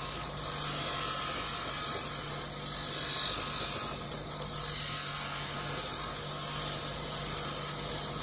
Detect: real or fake real